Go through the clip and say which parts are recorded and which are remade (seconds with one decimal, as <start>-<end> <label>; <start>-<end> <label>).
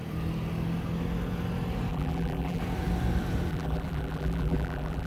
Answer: 0.0-1.9 recorded; 1.9-2.6 remade; 2.6-3.5 recorded; 3.5-5.1 remade